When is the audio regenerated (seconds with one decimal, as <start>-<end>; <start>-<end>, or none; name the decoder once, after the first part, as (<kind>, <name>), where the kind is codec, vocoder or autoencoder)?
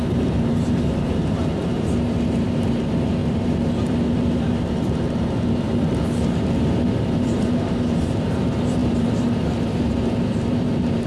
0.0-11.1 (vocoder, BigVGAN v2)